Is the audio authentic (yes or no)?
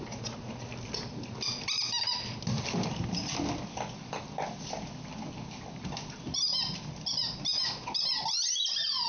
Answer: yes